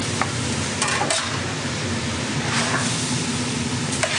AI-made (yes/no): yes